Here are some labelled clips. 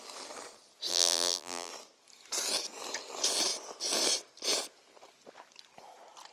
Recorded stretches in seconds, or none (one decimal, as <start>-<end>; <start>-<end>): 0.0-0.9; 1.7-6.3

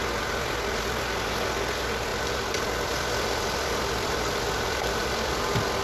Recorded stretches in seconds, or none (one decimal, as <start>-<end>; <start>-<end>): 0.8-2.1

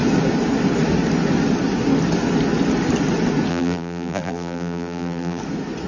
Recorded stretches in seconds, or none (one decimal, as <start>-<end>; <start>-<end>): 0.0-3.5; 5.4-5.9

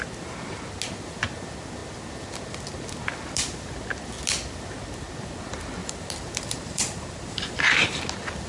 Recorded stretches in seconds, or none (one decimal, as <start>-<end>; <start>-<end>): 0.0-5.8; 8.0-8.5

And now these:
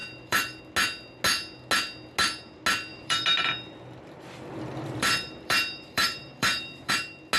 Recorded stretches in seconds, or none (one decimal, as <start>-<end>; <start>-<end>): 0.6-2.9; 6.9-7.4

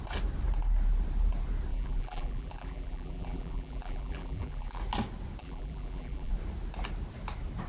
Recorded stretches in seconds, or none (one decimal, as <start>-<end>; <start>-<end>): 0.0-1.7; 4.8-5.4; 6.3-7.7